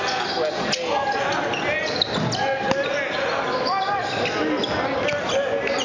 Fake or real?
real